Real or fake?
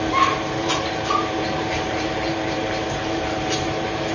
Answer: fake